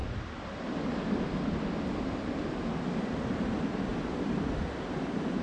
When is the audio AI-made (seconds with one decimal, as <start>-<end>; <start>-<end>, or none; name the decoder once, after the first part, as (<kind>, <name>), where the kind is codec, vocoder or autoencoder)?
3.2-5.4 (vocoder, BigVGAN v2)